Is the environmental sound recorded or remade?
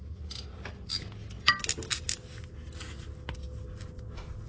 recorded